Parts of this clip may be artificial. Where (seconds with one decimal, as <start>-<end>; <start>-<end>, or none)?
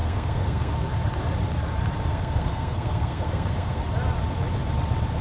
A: 0.0-0.7; 2.1-3.8